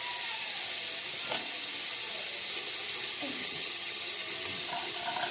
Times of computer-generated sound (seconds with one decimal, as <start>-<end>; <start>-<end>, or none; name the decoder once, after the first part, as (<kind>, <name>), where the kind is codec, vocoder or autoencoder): 3.4-4.1 (vocoder, HiFi-GAN)